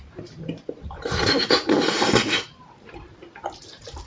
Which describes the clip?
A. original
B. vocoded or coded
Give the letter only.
B